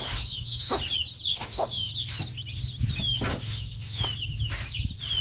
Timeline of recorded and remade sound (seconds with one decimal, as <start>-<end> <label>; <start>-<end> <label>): 0.0-0.8 remade; 0.8-1.3 recorded; 1.3-1.9 remade; 1.9-3.3 recorded; 3.3-4.0 remade; 4.0-5.2 recorded